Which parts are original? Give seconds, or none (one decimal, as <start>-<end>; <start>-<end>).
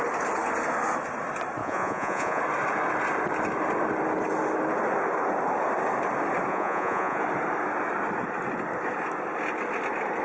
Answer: 0.0-1.6; 2.4-6.5; 7.2-10.2